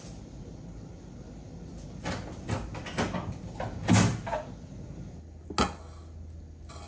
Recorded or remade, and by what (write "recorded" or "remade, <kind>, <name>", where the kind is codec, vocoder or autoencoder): recorded